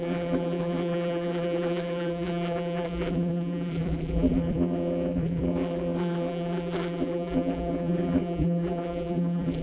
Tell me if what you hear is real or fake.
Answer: fake